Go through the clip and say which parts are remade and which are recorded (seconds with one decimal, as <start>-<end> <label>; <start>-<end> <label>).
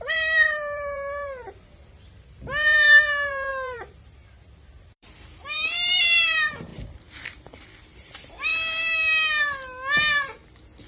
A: 0.0-8.5 remade; 8.5-10.9 recorded